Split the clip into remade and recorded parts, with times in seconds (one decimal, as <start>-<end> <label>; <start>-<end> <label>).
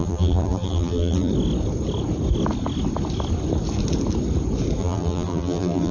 0.0-1.3 remade; 1.3-4.8 recorded; 4.8-5.9 remade